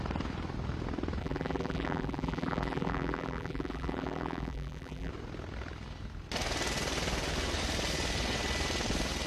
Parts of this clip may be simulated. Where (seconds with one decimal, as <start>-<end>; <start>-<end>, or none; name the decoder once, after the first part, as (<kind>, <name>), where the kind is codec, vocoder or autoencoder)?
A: 1.2-5.1 (vocoder, BigVGAN v2)

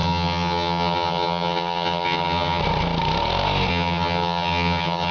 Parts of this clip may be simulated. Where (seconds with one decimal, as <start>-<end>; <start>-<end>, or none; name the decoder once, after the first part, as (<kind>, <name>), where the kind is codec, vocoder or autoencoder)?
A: 0.0-2.6 (vocoder, HiFi-GAN); 3.7-5.1

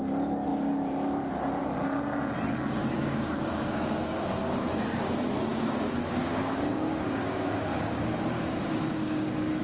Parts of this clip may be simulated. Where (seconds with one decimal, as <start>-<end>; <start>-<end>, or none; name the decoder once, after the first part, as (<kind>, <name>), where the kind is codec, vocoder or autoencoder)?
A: 2.8-4.7 (codec, DAC); 5.5-9.6

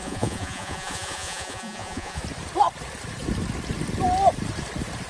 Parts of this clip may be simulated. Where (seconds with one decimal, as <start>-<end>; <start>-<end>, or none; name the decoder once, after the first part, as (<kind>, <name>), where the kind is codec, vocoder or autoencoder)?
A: 0.0-2.2 (vocoder, Vocos)

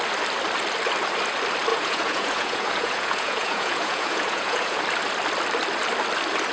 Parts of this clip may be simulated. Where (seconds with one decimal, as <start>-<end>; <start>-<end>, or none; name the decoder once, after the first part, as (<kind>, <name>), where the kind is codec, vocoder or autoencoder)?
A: 1.7-4.8 (vocoder, Vocos)

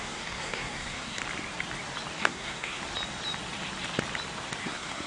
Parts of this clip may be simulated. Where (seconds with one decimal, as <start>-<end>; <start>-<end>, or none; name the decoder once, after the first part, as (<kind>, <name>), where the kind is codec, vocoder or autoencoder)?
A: 0.0-1.2 (codec, SNAC); 2.2-2.8; 4.6-5.1

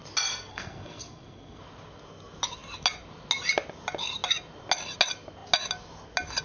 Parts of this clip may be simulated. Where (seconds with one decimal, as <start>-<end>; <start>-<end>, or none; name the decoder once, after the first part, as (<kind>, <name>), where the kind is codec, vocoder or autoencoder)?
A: 0.5-1.6 (codec, SNAC)